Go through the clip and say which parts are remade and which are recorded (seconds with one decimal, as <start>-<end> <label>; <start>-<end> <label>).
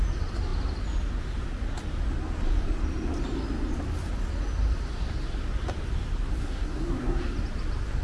0.0-6.4 recorded; 6.4-7.2 remade; 7.2-8.0 recorded